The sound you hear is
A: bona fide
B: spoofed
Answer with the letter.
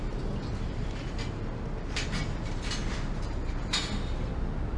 A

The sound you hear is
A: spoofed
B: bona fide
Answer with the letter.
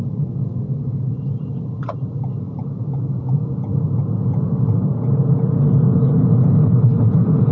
A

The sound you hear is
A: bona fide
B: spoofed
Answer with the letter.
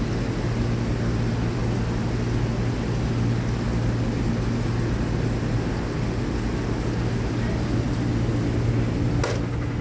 A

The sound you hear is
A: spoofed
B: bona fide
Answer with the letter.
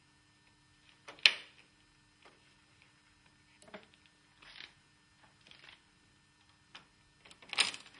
B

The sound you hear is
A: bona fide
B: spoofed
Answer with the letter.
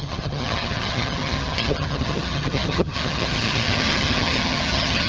B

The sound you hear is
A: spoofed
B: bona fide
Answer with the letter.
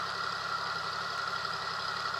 B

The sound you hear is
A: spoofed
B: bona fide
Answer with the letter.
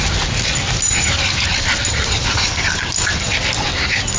B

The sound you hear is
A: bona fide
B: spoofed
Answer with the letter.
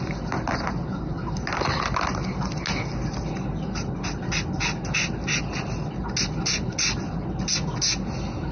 A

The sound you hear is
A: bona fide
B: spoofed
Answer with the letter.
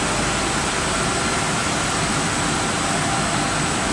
A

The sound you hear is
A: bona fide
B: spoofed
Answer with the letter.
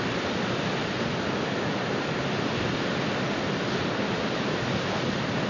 A